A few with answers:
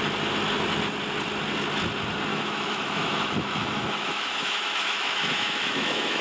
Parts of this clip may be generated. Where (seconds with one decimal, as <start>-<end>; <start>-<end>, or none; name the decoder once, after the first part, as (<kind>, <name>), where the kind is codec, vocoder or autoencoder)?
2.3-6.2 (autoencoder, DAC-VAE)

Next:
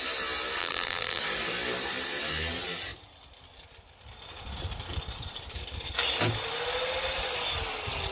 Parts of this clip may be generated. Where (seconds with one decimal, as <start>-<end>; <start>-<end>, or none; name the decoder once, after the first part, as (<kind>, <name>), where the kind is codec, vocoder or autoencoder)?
0.6-1.2 (vocoder, BigVGAN v2)

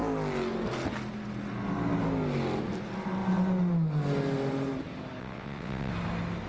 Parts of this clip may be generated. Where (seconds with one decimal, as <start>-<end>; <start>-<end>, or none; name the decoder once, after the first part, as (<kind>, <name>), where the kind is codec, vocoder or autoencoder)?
5.2-5.9 (vocoder, WaveNeXt)